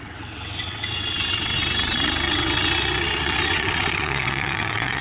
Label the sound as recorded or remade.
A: remade